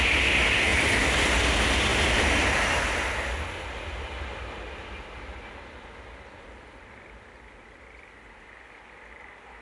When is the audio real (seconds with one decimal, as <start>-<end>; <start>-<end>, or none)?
0.0-9.6